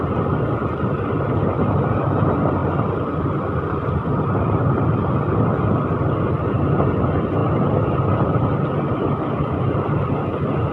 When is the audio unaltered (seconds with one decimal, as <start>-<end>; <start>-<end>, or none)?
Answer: 0.0-10.7